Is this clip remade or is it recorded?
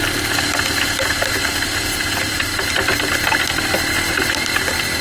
recorded